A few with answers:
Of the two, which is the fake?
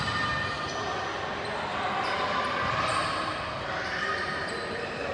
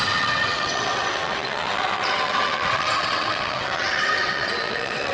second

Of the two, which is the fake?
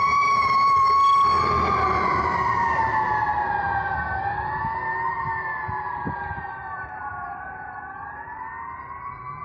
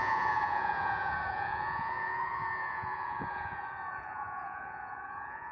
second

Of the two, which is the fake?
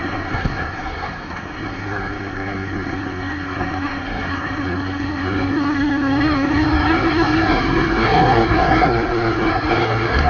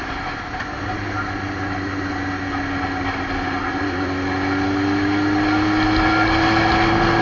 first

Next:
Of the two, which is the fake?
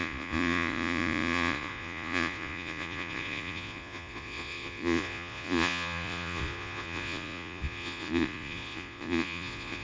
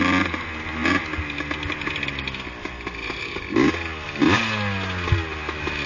first